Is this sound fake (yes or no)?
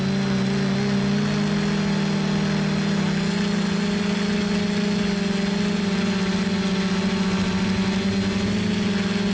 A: no